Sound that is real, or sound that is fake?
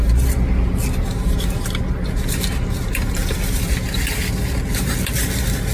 real